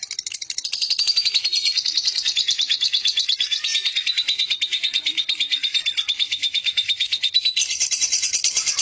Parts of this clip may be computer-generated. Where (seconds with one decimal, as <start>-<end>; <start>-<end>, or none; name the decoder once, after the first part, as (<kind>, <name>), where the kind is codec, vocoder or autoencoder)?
6.3-7.4 (autoencoder, DAC-VAE)